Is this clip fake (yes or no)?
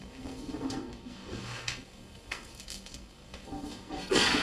yes